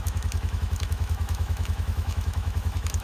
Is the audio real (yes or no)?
no